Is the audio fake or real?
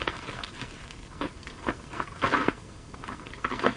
fake